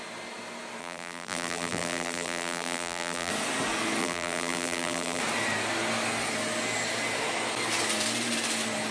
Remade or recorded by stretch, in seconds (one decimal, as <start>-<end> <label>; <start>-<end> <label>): 0.0-0.8 recorded; 0.8-3.3 remade; 3.3-4.0 recorded; 4.0-5.2 remade; 5.2-8.9 recorded